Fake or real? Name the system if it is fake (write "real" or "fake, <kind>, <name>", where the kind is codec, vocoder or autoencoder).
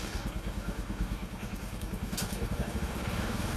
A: fake, codec, DAC